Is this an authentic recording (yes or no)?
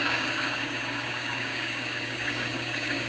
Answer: no